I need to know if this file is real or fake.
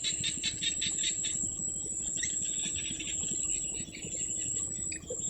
real